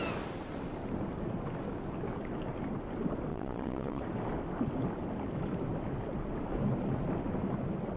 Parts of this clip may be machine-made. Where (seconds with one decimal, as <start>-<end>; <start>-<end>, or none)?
3.3-4.0